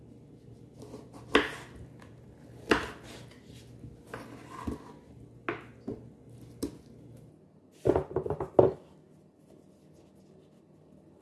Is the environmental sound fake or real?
real